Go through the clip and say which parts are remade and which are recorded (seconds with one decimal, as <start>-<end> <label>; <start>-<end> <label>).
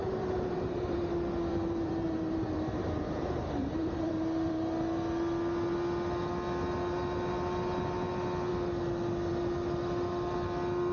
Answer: 0.0-1.1 remade; 1.1-1.5 recorded; 1.5-4.7 remade; 4.7-10.9 recorded